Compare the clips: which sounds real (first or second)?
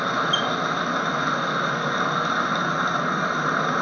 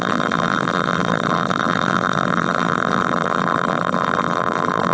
first